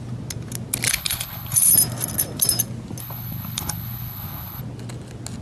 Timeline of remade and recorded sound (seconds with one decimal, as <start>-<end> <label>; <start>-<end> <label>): 0.0-0.9 recorded; 0.9-1.7 remade; 1.7-3.0 recorded; 3.0-4.6 remade; 4.6-5.4 recorded